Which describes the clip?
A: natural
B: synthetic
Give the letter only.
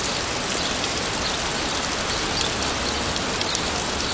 A